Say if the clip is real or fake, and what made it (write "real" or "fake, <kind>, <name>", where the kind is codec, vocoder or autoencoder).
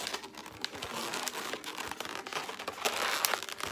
real